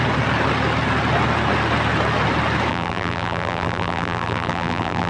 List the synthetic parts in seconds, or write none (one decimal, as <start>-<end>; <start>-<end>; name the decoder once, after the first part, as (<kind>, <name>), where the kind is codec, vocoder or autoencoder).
2.7-5.1 (vocoder, BigVGAN v2)